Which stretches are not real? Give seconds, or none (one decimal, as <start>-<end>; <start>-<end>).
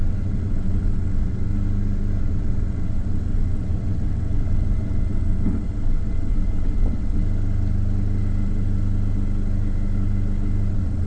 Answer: 0.0-1.5; 2.2-7.2; 10.7-11.1